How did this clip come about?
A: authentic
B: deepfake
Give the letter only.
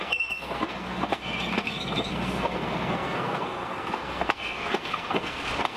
B